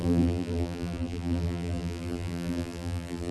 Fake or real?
fake